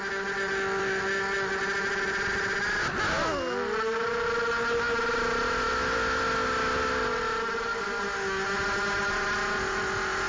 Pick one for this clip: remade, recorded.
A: recorded